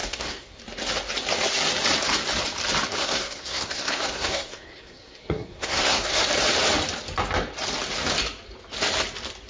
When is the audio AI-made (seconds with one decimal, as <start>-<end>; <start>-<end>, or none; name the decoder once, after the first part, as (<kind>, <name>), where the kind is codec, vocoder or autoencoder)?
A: 0.0-0.6 (codec, SNAC); 3.0-6.2